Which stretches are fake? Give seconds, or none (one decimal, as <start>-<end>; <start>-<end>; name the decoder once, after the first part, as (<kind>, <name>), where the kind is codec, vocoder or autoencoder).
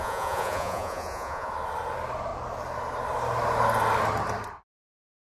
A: 0.0-1.5 (vocoder, Vocos)